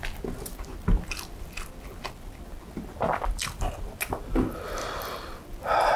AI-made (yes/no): no